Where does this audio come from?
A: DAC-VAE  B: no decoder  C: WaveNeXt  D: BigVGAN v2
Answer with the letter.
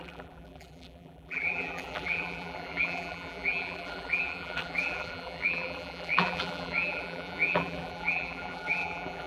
D